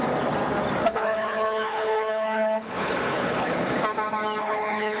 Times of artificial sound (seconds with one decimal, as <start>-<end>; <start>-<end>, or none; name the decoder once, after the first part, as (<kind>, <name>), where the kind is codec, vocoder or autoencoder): 0.8-3.8 (codec, HILCodec); 4.4-5.0